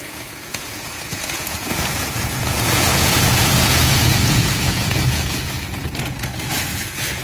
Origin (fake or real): fake